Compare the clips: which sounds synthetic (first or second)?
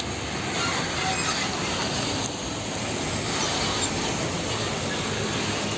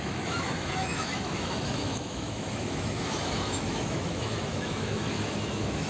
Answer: second